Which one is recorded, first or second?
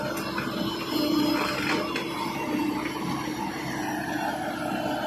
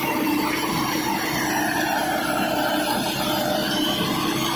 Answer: first